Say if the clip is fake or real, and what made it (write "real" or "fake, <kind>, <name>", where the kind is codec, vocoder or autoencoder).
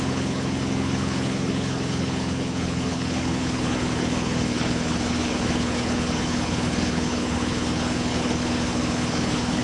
fake, codec, HILCodec